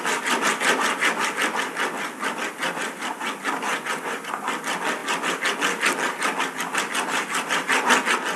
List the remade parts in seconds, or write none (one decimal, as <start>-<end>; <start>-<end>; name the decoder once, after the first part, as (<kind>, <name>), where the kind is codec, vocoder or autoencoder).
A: 3.7-4.2 (vocoder, Vocos)